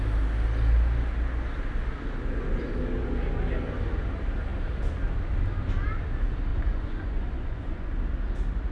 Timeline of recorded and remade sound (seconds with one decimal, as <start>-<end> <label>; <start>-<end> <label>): 0.0-6.5 recorded; 6.5-7.9 remade; 7.9-8.7 recorded